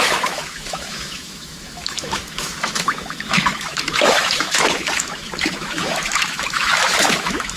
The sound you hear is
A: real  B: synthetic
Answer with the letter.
B